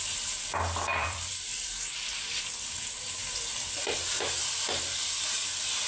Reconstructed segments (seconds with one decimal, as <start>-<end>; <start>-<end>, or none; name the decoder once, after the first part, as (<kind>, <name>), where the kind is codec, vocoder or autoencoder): 1.0-1.5 (vocoder, BigVGAN v2)